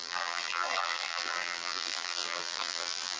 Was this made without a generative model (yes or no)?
no